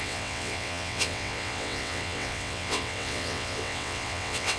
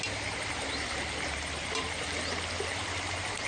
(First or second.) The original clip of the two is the second